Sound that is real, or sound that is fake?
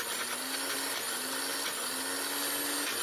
real